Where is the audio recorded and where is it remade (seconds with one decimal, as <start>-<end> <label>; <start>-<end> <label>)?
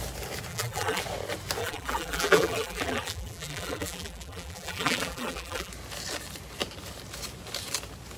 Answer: 0.0-0.5 recorded; 0.5-1.0 remade; 1.0-1.6 recorded; 1.6-5.7 remade; 5.7-8.2 recorded